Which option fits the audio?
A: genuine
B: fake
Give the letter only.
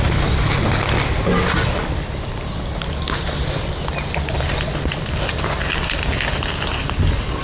A